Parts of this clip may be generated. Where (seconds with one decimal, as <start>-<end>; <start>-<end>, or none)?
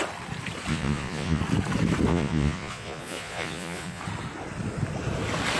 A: 0.7-1.4; 2.1-4.0